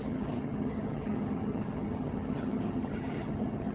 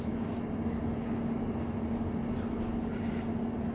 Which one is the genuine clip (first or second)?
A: second